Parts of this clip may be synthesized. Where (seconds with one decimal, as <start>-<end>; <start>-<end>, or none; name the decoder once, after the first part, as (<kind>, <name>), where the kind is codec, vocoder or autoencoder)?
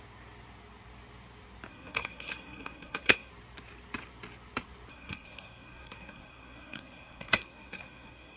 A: 1.7-3.3 (codec, SNAC); 4.9-8.4